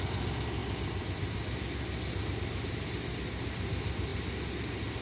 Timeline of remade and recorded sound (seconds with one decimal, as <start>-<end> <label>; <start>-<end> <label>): 0.0-5.0 recorded